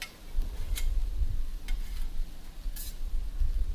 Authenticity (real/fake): real